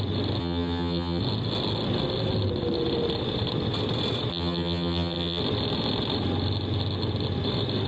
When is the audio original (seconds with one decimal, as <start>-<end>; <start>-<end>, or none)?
0.0-0.4; 1.2-4.3; 5.4-7.9